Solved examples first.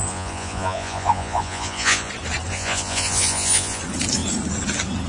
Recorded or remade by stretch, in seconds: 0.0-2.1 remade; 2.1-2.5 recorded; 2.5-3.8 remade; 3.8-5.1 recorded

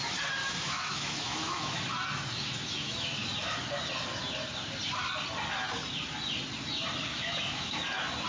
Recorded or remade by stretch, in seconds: 0.0-0.4 recorded; 0.4-1.8 remade; 1.8-2.3 recorded; 2.3-3.2 remade; 3.2-7.1 recorded; 7.1-7.8 remade; 7.8-8.3 recorded